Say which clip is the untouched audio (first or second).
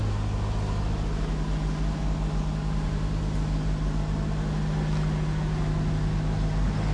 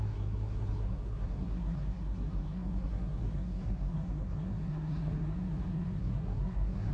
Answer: first